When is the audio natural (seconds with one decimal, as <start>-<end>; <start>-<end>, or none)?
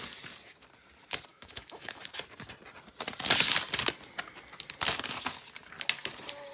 0.0-1.3; 2.0-6.5